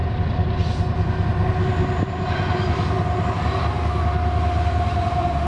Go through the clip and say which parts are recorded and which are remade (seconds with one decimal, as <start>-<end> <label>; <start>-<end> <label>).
0.0-5.5 recorded